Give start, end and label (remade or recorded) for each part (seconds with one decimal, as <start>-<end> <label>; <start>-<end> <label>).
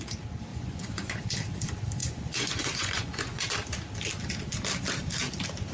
0.0-0.5 recorded; 0.5-1.2 remade; 1.2-2.0 recorded; 2.0-3.4 remade; 3.4-5.7 recorded